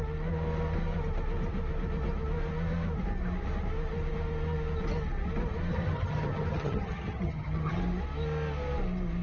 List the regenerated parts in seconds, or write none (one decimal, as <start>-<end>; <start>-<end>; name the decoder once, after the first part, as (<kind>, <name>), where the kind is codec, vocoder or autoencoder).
5.7-7.8 (vocoder, HiFi-GAN)